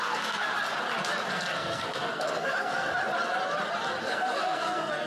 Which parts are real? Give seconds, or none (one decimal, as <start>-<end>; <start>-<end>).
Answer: 0.5-1.3; 2.9-4.0

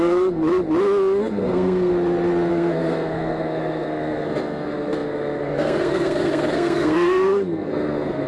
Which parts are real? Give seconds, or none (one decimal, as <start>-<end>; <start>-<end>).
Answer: 0.4-1.3; 1.9-2.5

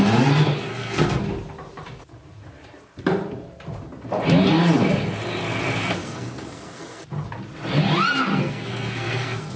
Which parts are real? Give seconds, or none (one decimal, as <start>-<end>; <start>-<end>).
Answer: 0.0-0.7; 1.2-6.0; 7.0-8.3